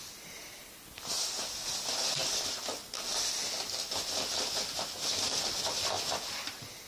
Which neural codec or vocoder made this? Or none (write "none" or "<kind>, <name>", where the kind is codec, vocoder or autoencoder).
none